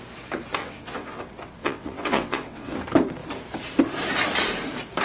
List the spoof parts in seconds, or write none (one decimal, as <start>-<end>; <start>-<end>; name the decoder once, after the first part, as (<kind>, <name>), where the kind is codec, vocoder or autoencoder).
0.6-1.2 (vocoder, WaveNeXt); 1.6-2.7